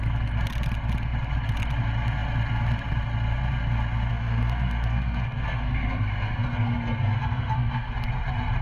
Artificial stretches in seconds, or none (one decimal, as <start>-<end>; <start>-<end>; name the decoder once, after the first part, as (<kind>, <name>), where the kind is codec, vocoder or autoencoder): 4.1-7.9 (codec, SNAC)